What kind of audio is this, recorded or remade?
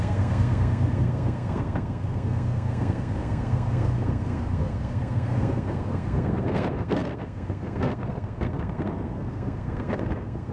remade